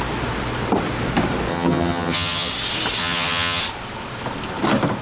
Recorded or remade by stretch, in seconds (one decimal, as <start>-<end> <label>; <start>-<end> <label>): 0.0-1.5 recorded; 1.5-2.5 remade; 2.5-3.0 recorded; 3.0-3.6 remade; 3.6-5.0 recorded